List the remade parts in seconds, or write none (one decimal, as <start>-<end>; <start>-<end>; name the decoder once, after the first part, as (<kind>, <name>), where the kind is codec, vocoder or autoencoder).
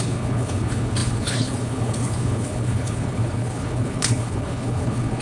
0.0-5.2 (codec, HILCodec)